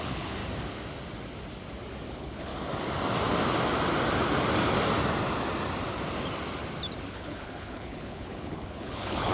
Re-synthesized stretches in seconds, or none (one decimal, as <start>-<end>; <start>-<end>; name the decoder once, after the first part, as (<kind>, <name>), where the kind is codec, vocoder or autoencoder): 0.0-0.4 (codec, HILCodec); 2.1-2.5; 7.1-9.3